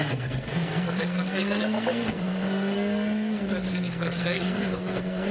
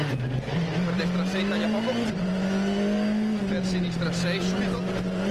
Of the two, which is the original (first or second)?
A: second